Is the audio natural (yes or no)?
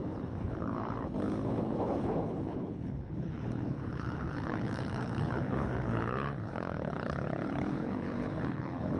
no